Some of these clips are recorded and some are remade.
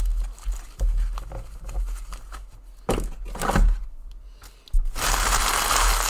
recorded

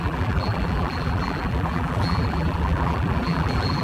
remade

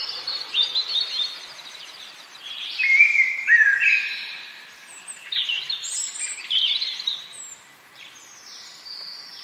remade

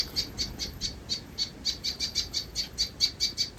recorded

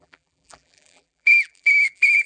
remade